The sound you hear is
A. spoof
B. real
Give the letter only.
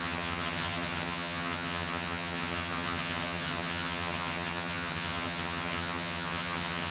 A